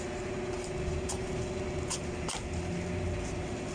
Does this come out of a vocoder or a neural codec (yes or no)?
no